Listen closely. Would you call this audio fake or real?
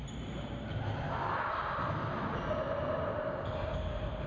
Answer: real